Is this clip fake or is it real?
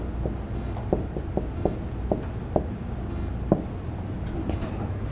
real